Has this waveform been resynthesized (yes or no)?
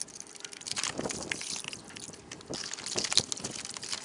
no